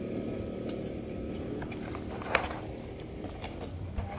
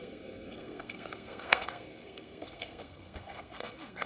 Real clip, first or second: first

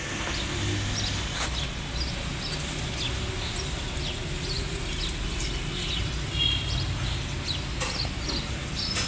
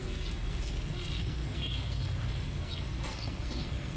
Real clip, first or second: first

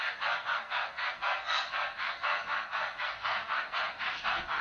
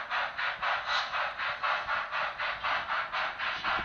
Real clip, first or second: second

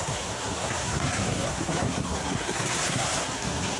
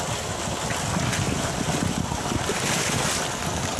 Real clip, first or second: second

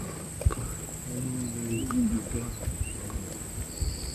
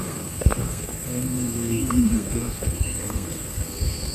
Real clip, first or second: first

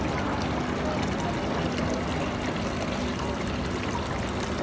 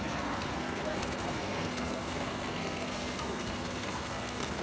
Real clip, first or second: first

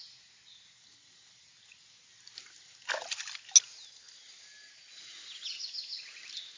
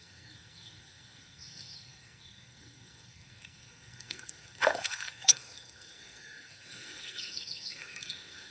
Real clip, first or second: first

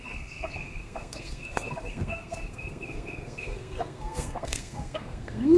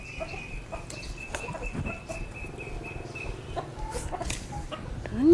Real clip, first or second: second